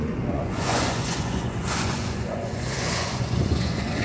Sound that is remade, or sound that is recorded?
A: remade